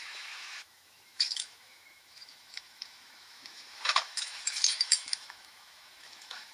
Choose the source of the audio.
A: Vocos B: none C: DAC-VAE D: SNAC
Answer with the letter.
C